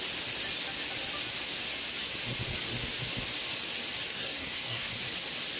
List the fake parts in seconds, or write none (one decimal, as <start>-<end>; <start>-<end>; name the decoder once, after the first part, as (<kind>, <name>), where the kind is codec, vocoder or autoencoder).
4.1-5.0 (codec, SNAC)